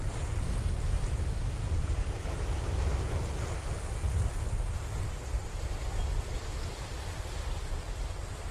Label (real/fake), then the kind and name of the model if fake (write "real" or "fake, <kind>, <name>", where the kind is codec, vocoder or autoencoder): real